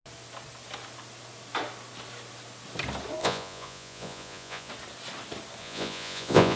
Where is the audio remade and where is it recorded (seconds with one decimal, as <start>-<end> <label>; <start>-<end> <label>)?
0.0-3.2 recorded; 3.2-4.7 remade; 4.7-5.6 recorded; 5.6-6.6 remade